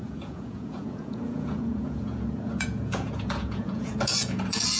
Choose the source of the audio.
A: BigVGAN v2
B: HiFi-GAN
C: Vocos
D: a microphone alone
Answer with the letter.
C